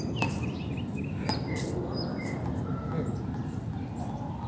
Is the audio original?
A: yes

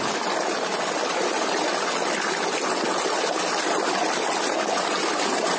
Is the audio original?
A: yes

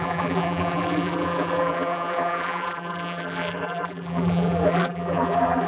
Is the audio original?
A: no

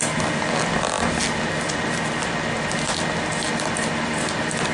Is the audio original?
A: yes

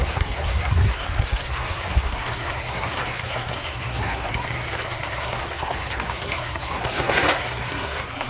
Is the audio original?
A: no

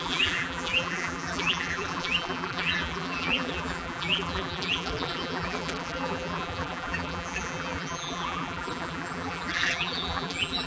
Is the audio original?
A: no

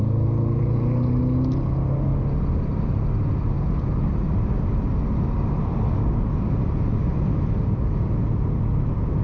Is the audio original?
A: yes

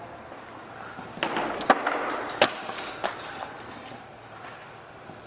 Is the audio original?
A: yes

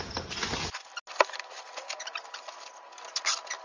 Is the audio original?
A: yes